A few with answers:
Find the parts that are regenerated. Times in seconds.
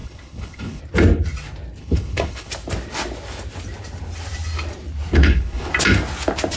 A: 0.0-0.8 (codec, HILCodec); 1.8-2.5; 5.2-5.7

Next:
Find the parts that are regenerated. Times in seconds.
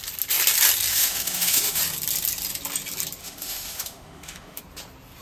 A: 0.9-1.8 (autoencoder, DAC-VAE); 3.2-4.6